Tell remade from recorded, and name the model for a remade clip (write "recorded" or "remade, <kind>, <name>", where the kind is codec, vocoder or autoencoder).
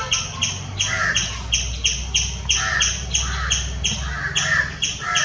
recorded